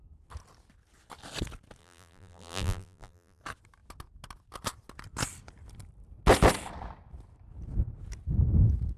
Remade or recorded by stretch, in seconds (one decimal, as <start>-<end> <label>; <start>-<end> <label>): 0.0-1.8 recorded; 1.8-3.4 remade; 3.4-9.0 recorded